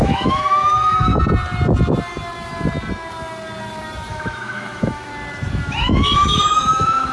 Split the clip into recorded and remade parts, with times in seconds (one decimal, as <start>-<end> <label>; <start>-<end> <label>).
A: 0.0-1.1 remade; 1.1-4.1 recorded; 4.1-5.1 remade; 5.1-5.7 recorded; 5.7-7.1 remade